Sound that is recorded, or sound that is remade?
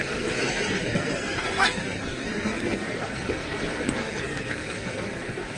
remade